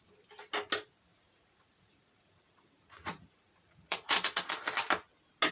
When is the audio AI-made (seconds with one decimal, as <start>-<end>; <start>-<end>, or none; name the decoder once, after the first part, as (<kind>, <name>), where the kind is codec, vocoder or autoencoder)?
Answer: 1.1-4.4 (vocoder, Vocos)

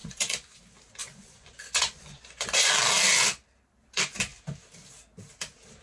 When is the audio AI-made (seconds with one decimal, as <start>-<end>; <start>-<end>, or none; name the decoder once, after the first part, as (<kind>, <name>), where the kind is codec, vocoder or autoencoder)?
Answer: 0.0-0.6 (vocoder, Vocos); 1.0-2.7